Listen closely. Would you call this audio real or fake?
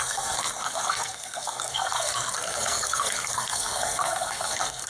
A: fake